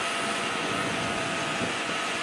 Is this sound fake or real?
fake